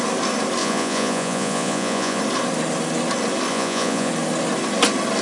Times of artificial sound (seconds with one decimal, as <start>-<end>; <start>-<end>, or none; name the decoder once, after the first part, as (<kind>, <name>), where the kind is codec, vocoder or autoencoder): 0.6-2.2 (vocoder, Vocos); 3.5-4.1